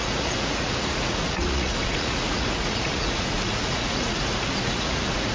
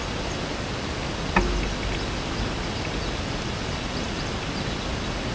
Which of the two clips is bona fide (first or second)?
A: second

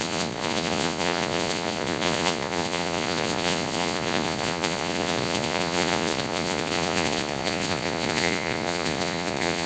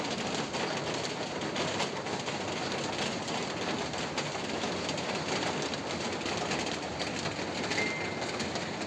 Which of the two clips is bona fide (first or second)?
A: second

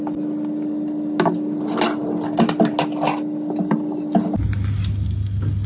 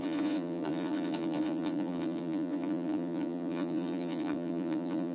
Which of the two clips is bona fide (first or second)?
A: first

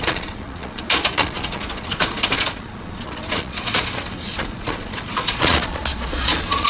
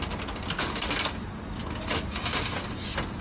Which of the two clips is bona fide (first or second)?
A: second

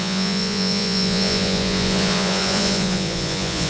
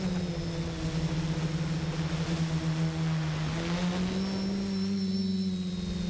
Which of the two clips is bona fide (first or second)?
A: second